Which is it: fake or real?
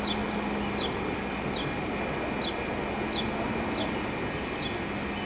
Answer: real